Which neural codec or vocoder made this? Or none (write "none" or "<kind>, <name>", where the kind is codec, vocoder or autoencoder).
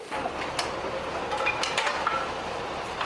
none